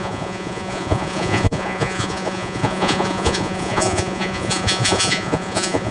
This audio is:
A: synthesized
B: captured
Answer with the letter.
A